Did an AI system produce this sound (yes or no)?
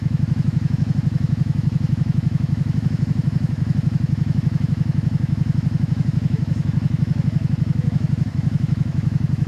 yes